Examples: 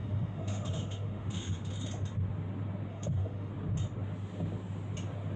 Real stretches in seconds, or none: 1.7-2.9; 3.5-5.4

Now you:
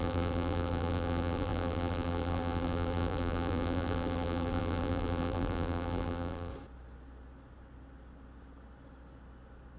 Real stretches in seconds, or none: 6.5-9.8

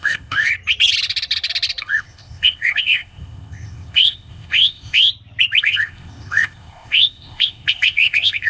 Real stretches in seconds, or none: 0.5-1.8; 5.1-5.6

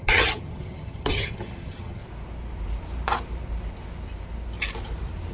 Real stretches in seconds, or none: 2.0-5.3